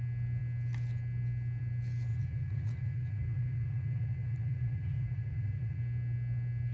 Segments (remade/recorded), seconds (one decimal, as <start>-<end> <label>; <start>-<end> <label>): 0.0-2.1 recorded; 2.1-5.8 remade; 5.8-6.7 recorded